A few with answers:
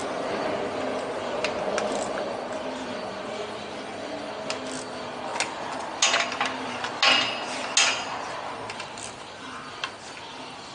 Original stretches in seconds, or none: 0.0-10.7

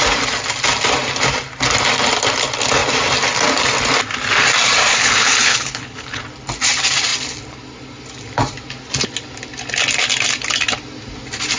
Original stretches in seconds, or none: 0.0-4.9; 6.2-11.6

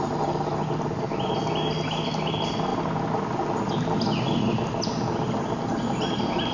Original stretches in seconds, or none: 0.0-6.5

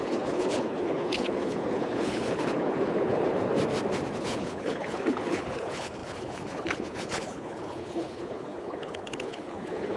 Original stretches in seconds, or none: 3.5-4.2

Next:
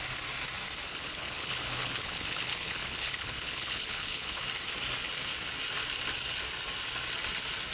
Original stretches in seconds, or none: 0.0-0.9; 4.4-7.7

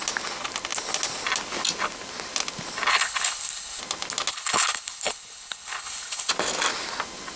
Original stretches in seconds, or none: 0.0-2.9; 3.8-4.3; 6.3-7.4

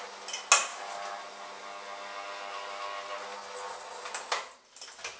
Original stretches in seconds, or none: 0.0-5.2